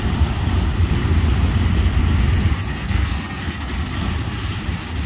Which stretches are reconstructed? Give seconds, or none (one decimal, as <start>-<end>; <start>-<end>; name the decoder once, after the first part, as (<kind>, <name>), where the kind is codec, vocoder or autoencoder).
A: 2.7-3.6 (codec, SNAC)